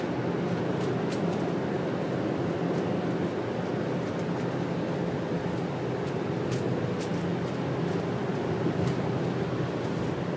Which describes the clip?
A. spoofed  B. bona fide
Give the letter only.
B